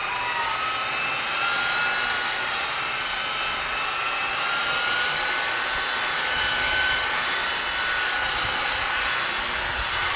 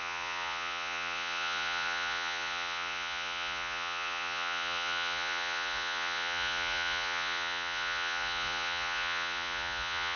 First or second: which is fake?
second